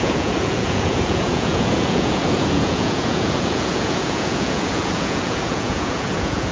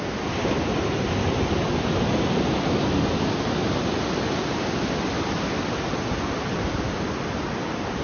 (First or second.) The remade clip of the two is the first